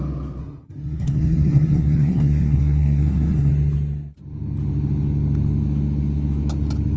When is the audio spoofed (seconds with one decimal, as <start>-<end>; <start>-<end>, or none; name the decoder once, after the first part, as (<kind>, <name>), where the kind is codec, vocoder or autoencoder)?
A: 0.4-3.5 (codec, SNAC)